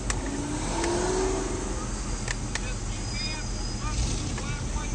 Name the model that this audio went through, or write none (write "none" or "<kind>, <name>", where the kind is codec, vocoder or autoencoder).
none